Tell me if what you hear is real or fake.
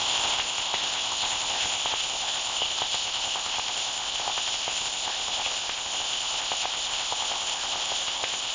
fake